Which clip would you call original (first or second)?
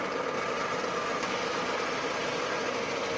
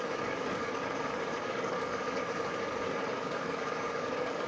first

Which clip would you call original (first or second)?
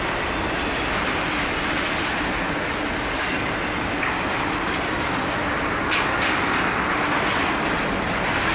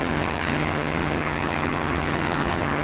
first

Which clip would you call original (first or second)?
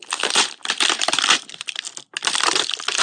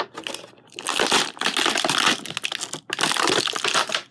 second